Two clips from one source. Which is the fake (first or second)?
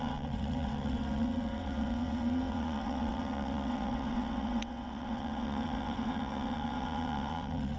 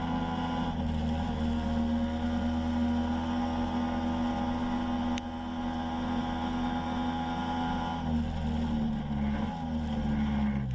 first